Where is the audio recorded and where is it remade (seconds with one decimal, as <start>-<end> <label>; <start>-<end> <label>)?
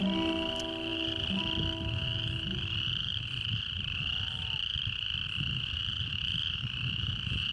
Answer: 0.0-7.5 recorded